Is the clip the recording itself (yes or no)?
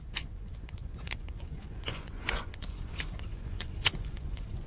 no